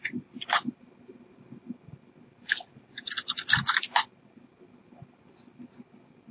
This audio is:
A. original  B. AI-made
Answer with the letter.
A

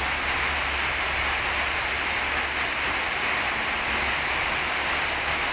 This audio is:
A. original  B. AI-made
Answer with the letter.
A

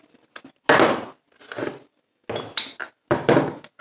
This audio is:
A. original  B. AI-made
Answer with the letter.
A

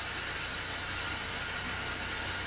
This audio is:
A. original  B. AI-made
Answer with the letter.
A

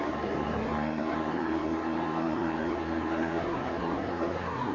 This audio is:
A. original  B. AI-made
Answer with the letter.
B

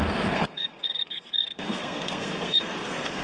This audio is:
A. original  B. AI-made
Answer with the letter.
B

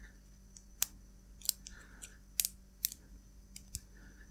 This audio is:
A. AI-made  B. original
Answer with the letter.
B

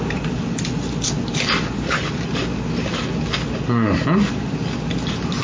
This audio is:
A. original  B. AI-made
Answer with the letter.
A